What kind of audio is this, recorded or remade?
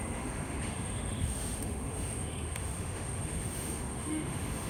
remade